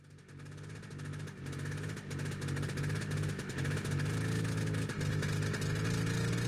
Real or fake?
real